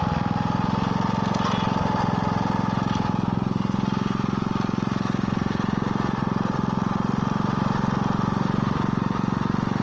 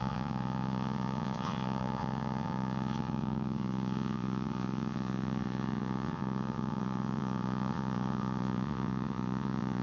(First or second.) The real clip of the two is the first